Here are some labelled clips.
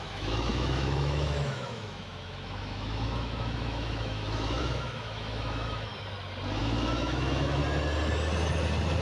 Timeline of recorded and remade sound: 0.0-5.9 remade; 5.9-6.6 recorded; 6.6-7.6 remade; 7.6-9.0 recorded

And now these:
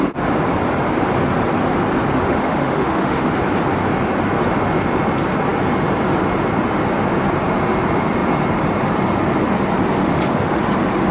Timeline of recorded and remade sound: 0.0-2.1 recorded; 2.1-3.3 remade; 3.3-10.0 recorded; 10.0-10.6 remade; 10.6-11.1 recorded

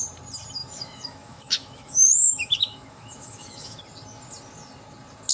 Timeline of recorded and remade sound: 0.0-0.6 recorded; 0.6-3.8 remade; 3.8-5.3 recorded

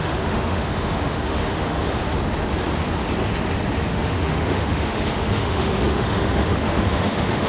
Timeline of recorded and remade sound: 0.0-2.0 remade; 2.0-3.9 recorded; 3.9-7.5 remade

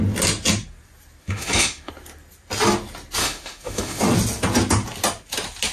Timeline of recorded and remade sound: 0.0-1.2 recorded; 1.2-1.9 remade; 1.9-3.2 recorded; 3.2-4.0 remade; 4.0-5.7 recorded

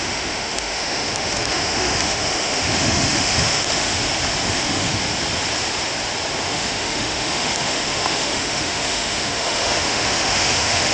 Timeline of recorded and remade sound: 0.0-4.0 remade; 4.0-4.5 recorded; 4.5-5.0 remade; 5.0-6.4 recorded; 6.4-10.9 remade

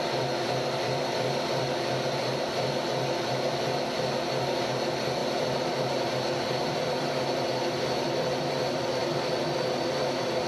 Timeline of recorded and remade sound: 0.0-10.5 recorded